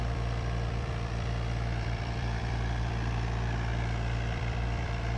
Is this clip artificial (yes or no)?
yes